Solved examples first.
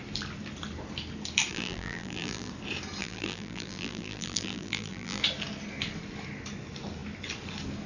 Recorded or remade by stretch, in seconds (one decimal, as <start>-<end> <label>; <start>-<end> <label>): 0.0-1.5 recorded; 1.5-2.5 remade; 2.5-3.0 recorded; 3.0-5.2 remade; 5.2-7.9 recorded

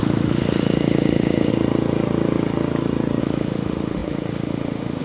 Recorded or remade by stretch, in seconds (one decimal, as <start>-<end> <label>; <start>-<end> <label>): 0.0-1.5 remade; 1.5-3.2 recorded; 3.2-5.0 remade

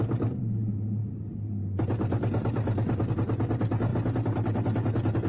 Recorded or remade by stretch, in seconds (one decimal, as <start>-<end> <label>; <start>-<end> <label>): 0.0-5.3 recorded

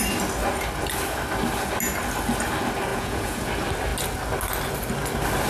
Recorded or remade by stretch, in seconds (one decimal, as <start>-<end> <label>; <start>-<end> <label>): 0.0-2.9 recorded; 2.9-3.5 remade; 3.5-5.5 recorded

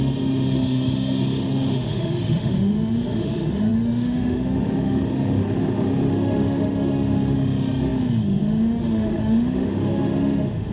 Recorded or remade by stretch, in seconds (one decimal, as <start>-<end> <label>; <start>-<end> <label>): 0.0-10.7 remade

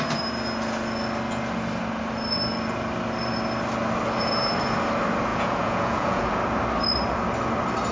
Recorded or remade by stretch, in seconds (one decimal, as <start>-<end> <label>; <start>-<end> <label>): 0.0-5.3 recorded; 5.3-6.3 remade; 6.3-7.9 recorded

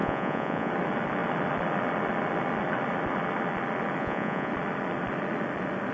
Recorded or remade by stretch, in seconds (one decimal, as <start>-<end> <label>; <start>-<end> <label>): 0.0-0.7 remade; 0.7-4.0 recorded; 4.0-4.5 remade; 4.5-5.9 recorded